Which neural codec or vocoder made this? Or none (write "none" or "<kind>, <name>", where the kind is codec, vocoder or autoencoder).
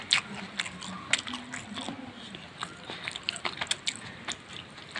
none